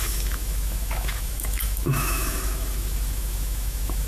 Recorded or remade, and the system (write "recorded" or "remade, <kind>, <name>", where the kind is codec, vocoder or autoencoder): remade, autoencoder, DAC-VAE